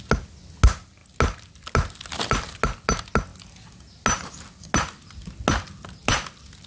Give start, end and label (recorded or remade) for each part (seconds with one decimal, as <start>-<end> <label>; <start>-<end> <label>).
0.0-6.7 recorded